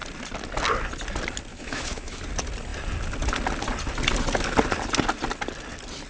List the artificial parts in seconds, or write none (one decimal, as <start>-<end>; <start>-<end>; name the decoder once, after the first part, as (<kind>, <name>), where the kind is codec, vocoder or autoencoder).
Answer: 1.5-2.2 (autoencoder, DAC-VAE)